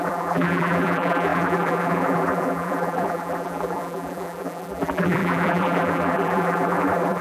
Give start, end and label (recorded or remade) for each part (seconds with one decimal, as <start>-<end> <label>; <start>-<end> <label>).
0.0-7.2 remade